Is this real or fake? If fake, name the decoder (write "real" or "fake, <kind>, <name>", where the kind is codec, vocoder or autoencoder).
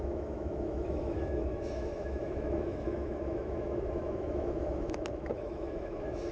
fake, autoencoder, DAC-VAE